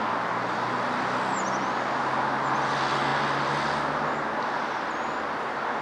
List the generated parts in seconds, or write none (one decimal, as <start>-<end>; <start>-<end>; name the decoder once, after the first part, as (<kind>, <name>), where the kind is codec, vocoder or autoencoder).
none